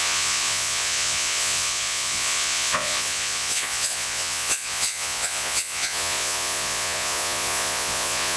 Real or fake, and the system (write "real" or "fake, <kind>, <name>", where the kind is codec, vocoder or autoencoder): fake, vocoder, Vocos